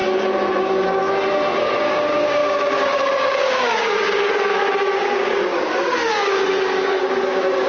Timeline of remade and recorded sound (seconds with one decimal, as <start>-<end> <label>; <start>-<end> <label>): 0.0-0.6 recorded; 0.6-1.0 remade; 1.0-1.6 recorded; 1.6-7.7 remade